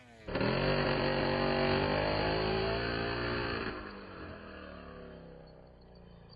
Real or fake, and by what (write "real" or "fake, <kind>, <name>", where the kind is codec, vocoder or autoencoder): real